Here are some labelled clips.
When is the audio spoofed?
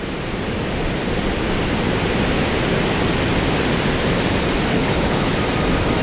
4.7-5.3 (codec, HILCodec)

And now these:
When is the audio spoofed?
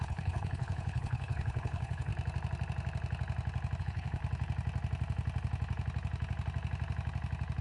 0.0-2.1 (codec, HILCodec); 3.8-4.2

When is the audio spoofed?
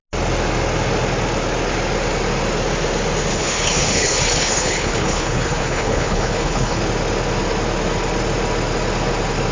3.3-6.8 (codec, HILCodec)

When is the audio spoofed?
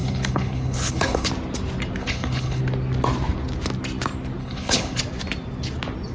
0.0-1.3 (codec, HILCodec); 2.0-2.6; 4.4-5.0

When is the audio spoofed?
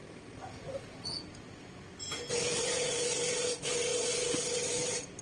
none